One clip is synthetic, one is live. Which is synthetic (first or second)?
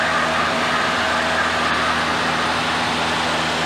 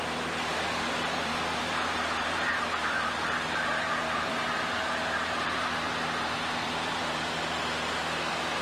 second